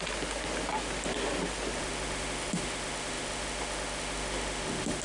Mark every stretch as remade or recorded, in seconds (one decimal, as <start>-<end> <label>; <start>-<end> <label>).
0.0-1.8 recorded; 1.8-5.0 remade